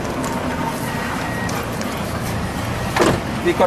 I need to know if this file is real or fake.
real